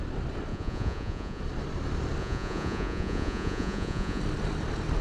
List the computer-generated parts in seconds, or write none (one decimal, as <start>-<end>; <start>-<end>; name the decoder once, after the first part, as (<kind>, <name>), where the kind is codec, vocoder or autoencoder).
0.5-1.4 (vocoder, Vocos); 2.2-4.2